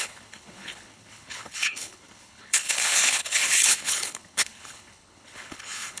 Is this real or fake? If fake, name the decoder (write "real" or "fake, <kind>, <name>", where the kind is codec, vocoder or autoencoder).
fake, codec, HILCodec